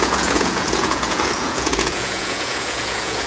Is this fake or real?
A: fake